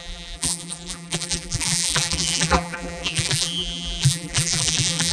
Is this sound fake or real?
fake